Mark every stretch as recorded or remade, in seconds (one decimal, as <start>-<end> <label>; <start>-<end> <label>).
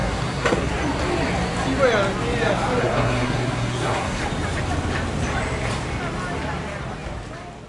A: 0.0-0.7 remade; 0.7-2.8 recorded; 2.8-4.2 remade; 4.2-7.7 recorded